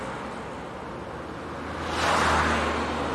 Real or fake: real